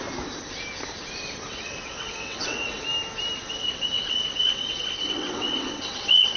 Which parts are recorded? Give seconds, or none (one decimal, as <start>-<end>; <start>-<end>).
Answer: 0.0-1.5; 2.8-3.6